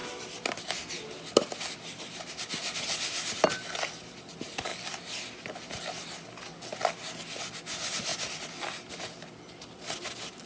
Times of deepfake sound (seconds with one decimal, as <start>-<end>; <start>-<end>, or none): none